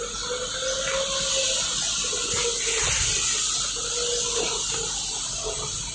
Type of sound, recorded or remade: recorded